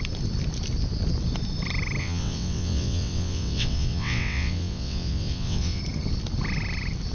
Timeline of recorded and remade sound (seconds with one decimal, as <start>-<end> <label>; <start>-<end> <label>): 0.0-2.0 recorded; 2.0-5.8 remade; 5.8-7.1 recorded